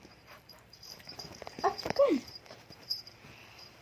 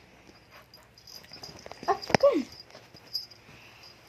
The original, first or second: second